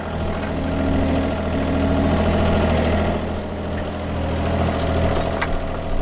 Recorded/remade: recorded